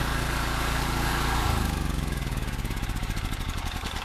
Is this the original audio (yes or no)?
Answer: no